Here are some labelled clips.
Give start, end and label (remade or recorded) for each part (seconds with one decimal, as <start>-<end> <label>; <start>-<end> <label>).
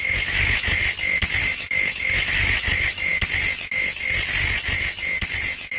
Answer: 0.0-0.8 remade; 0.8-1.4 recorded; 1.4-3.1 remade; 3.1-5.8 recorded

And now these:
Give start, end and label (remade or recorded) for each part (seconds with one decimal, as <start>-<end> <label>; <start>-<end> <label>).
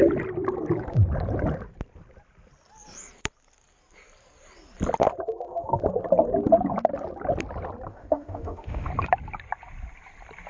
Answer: 0.0-7.9 recorded; 7.9-8.9 remade; 8.9-10.5 recorded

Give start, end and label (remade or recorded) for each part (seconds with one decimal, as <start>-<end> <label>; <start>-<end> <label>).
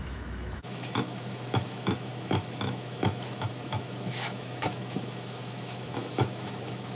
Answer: 0.0-6.9 remade